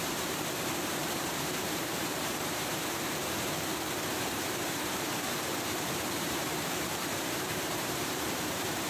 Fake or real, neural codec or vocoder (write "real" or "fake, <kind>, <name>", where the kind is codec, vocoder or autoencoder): fake, vocoder, BigVGAN v2